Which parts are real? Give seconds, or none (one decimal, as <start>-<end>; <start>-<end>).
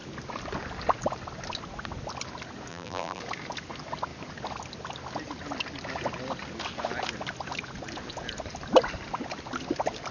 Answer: 0.0-2.7; 3.2-10.1